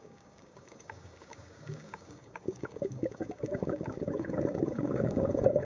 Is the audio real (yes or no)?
no